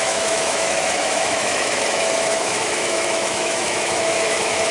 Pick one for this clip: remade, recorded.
remade